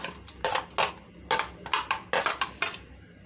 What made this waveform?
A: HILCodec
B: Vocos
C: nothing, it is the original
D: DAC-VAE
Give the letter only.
C